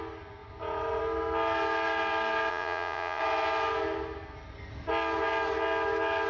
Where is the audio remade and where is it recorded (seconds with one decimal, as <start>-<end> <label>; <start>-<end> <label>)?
0.0-2.5 recorded; 2.5-3.2 remade; 3.2-6.3 recorded